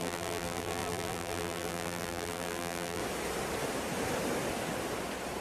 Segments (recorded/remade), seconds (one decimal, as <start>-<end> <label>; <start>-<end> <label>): 0.0-3.0 remade; 3.0-5.4 recorded